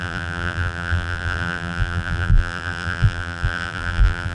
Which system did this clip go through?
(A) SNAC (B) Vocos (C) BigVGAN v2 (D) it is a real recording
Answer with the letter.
C